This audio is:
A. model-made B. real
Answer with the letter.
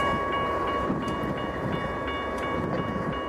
B